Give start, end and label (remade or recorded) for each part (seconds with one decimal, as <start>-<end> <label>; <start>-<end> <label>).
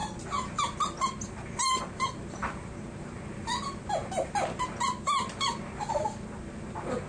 0.0-7.1 recorded